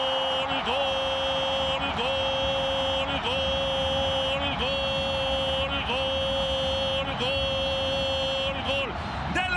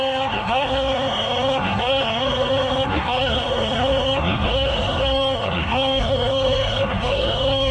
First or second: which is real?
first